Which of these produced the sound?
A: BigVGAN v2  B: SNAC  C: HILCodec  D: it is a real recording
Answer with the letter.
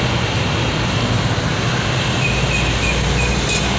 D